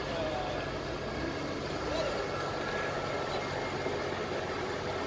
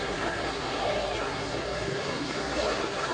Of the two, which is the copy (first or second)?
second